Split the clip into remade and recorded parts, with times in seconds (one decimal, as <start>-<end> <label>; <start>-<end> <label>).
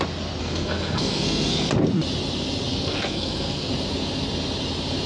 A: 0.0-0.4 recorded; 0.4-1.7 remade; 1.7-2.7 recorded; 2.7-3.7 remade; 3.7-5.1 recorded